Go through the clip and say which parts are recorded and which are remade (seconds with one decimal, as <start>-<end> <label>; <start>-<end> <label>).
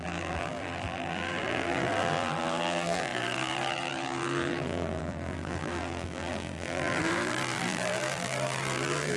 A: 0.0-9.2 remade